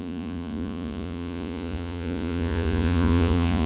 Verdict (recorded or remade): remade